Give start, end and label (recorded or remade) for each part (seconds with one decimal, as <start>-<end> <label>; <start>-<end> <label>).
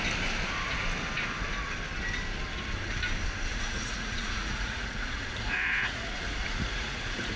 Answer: 0.0-3.5 recorded; 3.5-7.4 remade